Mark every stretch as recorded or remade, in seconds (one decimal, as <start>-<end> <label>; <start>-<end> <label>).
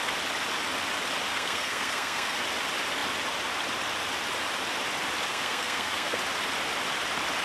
0.0-1.3 recorded; 1.3-2.4 remade; 2.4-5.3 recorded; 5.3-6.2 remade; 6.2-7.4 recorded